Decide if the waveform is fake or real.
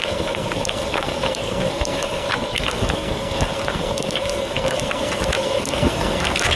fake